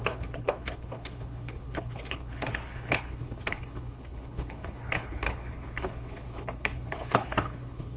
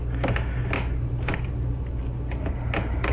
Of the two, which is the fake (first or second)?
first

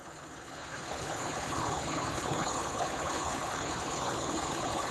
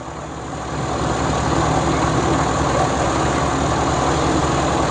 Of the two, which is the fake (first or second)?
first